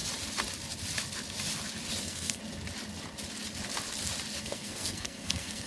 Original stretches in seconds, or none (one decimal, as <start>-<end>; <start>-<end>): 0.0-2.0; 2.4-4.4